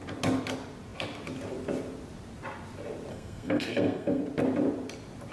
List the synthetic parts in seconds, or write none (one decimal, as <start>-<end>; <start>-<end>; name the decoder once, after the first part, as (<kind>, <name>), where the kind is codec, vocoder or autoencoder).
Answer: 3.1-4.2 (codec, SNAC)